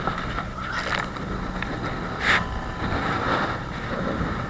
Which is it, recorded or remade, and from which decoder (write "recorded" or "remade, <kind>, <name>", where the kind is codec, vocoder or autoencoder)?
recorded